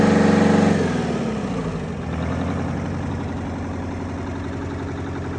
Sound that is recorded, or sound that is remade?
recorded